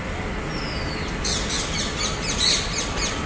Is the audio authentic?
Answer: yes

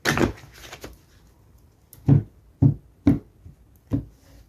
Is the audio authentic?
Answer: yes